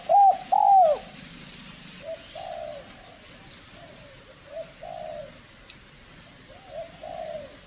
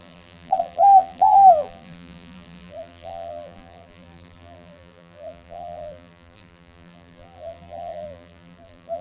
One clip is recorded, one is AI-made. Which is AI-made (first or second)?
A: second